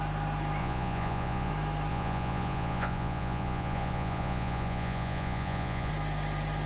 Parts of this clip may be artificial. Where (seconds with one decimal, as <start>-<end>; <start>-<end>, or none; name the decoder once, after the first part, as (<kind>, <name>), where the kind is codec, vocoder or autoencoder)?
0.6-1.5 (vocoder, Vocos); 1.9-5.9